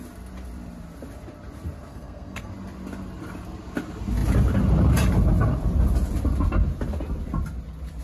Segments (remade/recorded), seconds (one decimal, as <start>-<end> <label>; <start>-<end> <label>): 0.0-1.9 recorded; 1.9-2.5 remade; 2.5-8.0 recorded